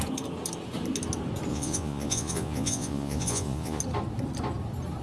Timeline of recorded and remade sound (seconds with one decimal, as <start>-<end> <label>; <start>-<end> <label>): 0.0-1.5 recorded; 1.5-3.8 remade; 3.8-5.0 recorded